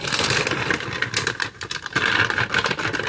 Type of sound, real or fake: real